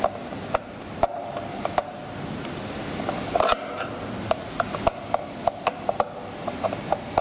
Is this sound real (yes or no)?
yes